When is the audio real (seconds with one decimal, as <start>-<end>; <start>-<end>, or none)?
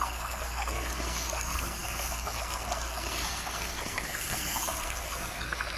none